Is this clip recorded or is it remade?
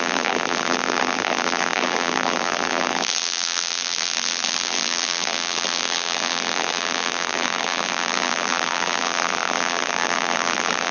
remade